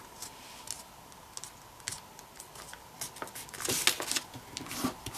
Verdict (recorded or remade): recorded